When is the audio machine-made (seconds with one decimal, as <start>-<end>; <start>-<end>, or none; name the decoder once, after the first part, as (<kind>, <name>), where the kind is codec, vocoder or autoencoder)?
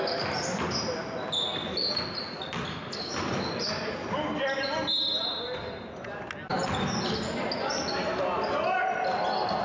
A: none